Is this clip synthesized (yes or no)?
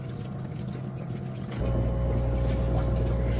no